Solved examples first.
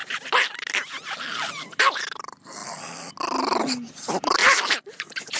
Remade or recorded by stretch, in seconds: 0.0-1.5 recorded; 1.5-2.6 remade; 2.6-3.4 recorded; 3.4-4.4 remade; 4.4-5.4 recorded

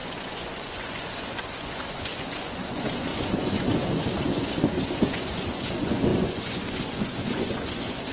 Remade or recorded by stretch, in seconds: 0.0-8.1 remade

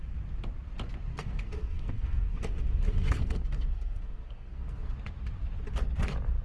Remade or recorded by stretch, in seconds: 0.0-1.1 recorded; 1.1-4.9 remade; 4.9-6.4 recorded

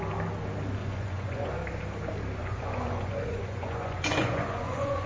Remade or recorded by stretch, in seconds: 0.0-0.8 recorded; 0.8-1.5 remade; 1.5-2.4 recorded; 2.4-5.1 remade

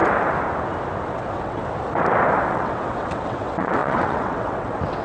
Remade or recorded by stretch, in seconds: 0.0-1.1 recorded; 1.1-1.6 remade; 1.6-2.5 recorded; 2.5-5.0 remade

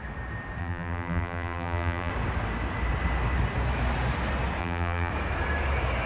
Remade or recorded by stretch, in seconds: 0.0-0.6 recorded; 0.6-2.1 remade; 2.1-4.6 recorded; 4.6-5.1 remade; 5.1-6.1 recorded

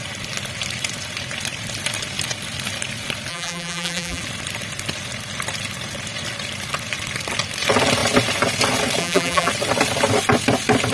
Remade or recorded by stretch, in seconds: 0.0-3.3 recorded; 3.3-4.2 remade; 4.2-9.0 recorded; 9.0-9.5 remade; 9.5-10.9 recorded

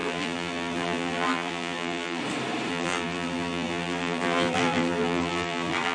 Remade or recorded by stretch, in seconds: 0.0-2.2 remade; 2.2-2.7 recorded; 2.7-5.9 remade